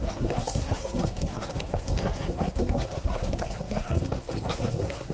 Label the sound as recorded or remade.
remade